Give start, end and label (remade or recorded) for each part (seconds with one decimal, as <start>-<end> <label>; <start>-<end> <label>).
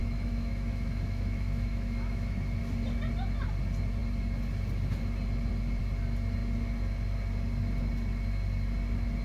0.0-2.6 remade; 2.6-9.2 recorded